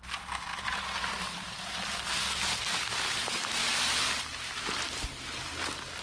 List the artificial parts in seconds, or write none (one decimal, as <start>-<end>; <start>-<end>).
none